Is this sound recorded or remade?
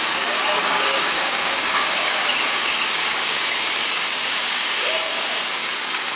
remade